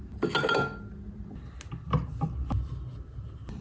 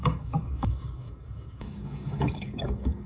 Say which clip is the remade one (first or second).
second